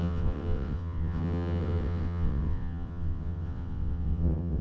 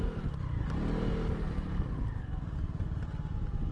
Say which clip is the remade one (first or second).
first